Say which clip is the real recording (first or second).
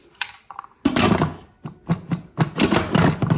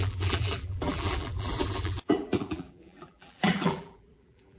first